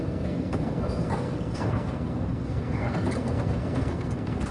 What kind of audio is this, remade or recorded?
remade